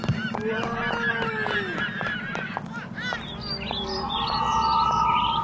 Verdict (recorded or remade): recorded